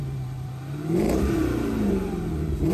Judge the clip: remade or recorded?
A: remade